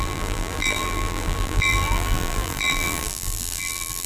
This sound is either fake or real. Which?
fake